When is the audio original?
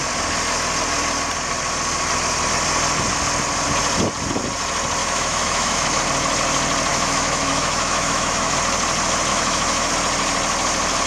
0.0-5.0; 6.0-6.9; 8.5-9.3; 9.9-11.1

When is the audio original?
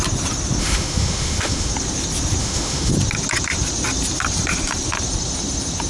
0.0-0.6; 1.7-2.4; 2.9-5.9